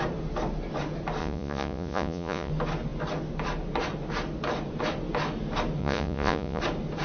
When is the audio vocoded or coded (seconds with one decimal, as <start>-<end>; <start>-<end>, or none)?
1.2-2.5; 5.8-6.6